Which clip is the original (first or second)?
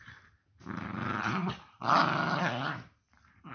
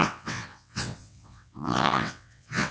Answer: first